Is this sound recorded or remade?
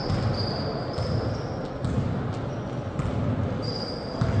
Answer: recorded